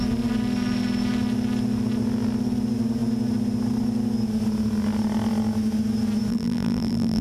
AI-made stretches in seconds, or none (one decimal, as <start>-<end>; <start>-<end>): 6.3-7.2